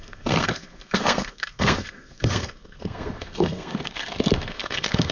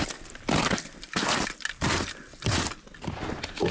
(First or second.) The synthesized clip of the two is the first